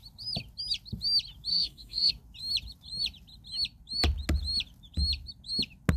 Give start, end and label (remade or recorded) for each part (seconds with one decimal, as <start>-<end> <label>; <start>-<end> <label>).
0.0-1.5 recorded; 1.5-2.1 remade; 2.1-6.0 recorded